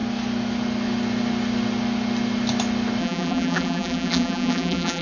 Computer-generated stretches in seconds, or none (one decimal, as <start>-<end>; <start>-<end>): 3.0-5.0